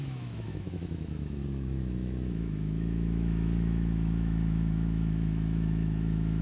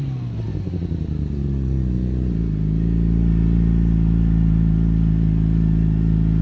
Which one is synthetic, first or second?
first